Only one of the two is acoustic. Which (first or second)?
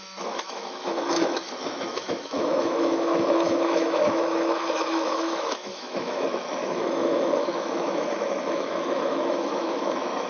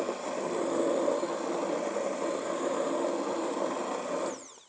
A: second